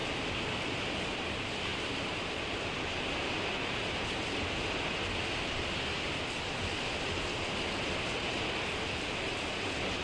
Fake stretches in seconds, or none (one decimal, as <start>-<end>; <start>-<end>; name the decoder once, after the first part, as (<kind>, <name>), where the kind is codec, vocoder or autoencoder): none